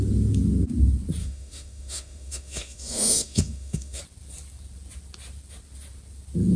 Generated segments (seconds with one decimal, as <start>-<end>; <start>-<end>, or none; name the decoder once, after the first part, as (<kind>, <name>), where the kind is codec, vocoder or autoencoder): 1.2-4.0 (autoencoder, DAC-VAE)